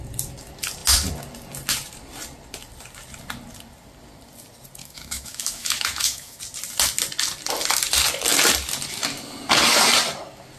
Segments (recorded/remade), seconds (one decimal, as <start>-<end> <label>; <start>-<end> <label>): 0.0-4.8 recorded; 4.8-6.4 remade; 6.4-10.6 recorded

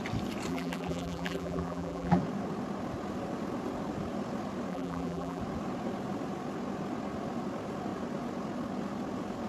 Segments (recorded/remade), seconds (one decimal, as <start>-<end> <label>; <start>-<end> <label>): 0.0-0.5 recorded; 0.5-2.2 remade; 2.2-4.7 recorded; 4.7-5.4 remade; 5.4-9.5 recorded

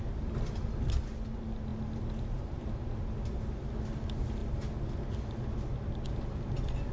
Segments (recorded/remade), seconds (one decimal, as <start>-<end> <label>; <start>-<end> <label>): 0.0-6.9 recorded

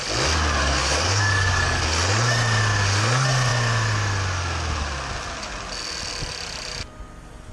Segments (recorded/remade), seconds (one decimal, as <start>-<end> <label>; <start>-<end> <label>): 0.0-0.6 recorded; 0.6-1.8 remade; 1.8-7.5 recorded

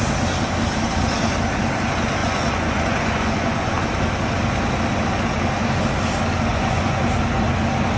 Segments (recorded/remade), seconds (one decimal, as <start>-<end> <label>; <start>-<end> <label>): 0.0-2.2 recorded; 2.2-3.7 remade; 3.7-6.5 recorded; 6.5-7.0 remade; 7.0-8.0 recorded

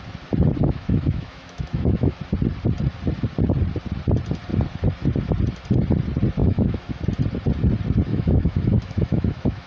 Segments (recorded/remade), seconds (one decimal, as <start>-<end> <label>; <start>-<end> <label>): 0.0-0.6 recorded; 0.6-2.2 remade; 2.2-6.4 recorded; 6.4-7.0 remade; 7.0-8.1 recorded; 8.1-9.7 remade

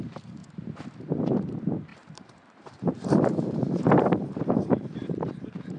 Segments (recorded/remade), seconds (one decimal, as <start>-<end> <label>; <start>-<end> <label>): 0.0-0.4 remade; 0.4-1.0 recorded; 1.0-5.8 remade

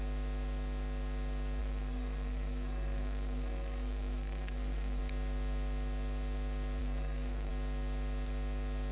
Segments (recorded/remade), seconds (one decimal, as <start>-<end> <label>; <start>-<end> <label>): 0.0-1.6 recorded; 1.6-5.0 remade; 5.0-6.8 recorded; 6.8-7.5 remade; 7.5-8.9 recorded